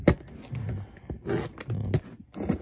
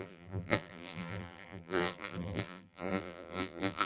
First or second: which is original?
first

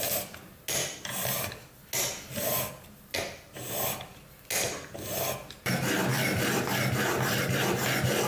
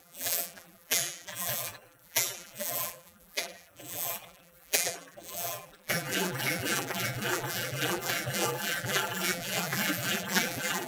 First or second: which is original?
first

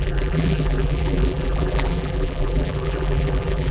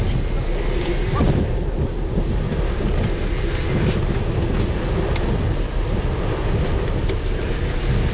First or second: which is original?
second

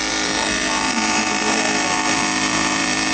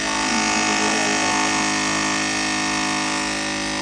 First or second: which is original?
second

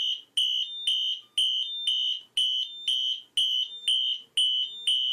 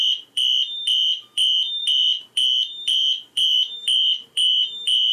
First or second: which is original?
first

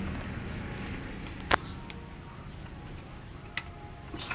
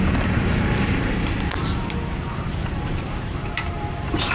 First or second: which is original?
first